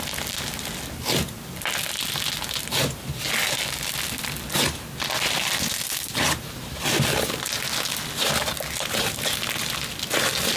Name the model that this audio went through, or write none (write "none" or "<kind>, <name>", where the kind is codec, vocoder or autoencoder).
none